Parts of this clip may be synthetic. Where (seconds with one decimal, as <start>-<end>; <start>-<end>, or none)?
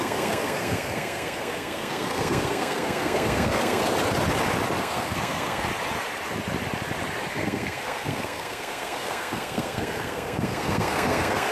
0.0-3.8; 4.8-5.7; 7.3-11.5